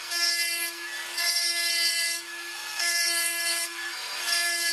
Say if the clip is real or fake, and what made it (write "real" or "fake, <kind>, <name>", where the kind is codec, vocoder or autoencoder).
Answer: fake, codec, SNAC